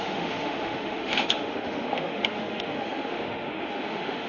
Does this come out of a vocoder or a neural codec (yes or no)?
yes